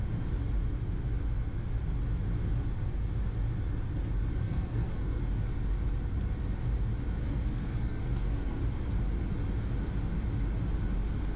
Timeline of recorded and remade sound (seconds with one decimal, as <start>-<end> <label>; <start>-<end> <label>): 0.0-4.4 recorded; 4.4-5.2 remade; 5.2-7.2 recorded; 7.2-8.6 remade; 8.6-11.4 recorded